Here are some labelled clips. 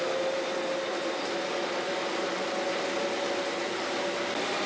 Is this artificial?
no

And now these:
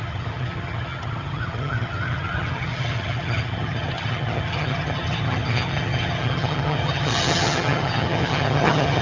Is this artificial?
yes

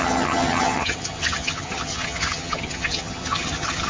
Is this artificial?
yes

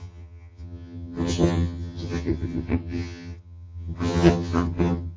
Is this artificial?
yes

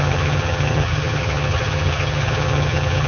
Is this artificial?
yes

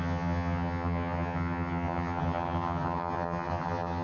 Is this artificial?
yes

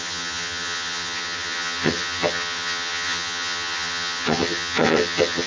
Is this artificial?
yes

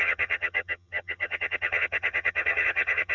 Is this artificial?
yes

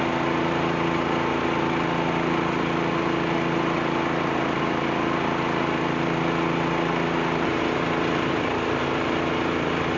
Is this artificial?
no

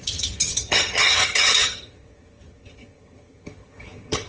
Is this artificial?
yes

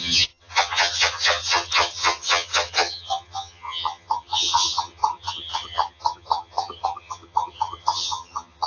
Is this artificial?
yes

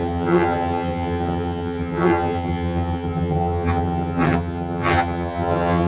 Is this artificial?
yes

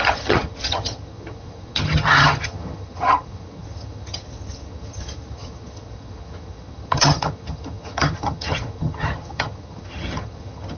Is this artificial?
yes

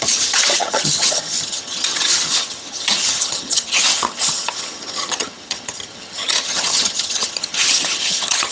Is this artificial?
yes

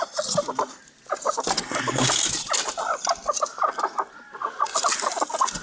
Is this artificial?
no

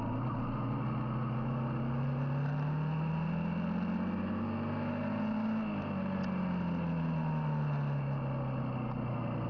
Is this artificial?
no